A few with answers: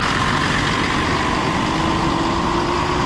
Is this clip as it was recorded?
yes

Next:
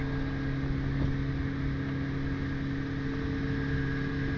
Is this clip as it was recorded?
yes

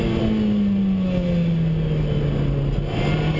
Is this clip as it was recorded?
yes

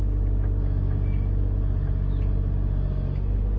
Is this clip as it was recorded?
yes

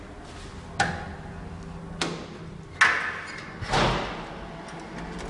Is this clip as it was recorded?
yes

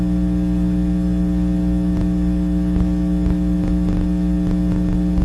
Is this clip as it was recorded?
yes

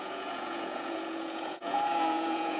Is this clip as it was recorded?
no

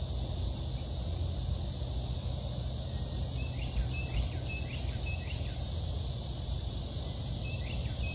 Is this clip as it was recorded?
yes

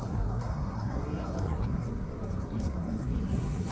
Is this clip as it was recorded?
no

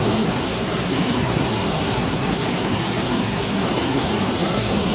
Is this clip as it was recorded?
no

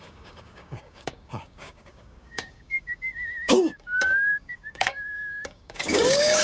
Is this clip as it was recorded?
no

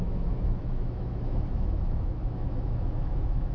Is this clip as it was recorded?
no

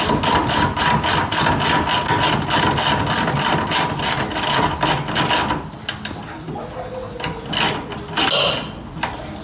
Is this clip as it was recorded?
yes